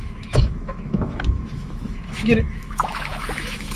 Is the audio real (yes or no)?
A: no